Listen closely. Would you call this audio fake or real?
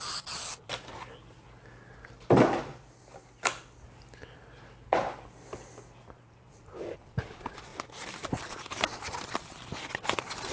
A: real